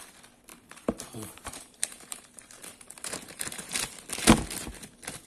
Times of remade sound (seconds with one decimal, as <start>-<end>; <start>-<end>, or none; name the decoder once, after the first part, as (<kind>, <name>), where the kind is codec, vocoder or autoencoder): 0.5-3.7 (vocoder, BigVGAN v2)